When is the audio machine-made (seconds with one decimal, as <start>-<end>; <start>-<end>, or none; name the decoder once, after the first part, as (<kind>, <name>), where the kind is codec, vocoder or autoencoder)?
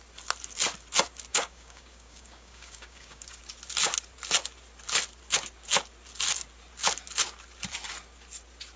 1.3-3.4 (codec, DAC)